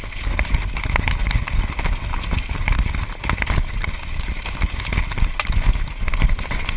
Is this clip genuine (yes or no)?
yes